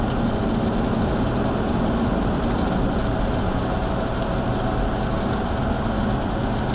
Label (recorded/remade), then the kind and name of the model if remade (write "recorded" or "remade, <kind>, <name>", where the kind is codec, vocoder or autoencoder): recorded